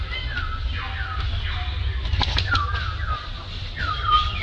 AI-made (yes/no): no